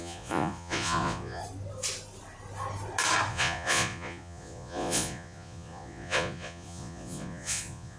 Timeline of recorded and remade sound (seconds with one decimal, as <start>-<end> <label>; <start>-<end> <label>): 0.0-1.4 remade; 1.4-3.3 recorded; 3.3-8.0 remade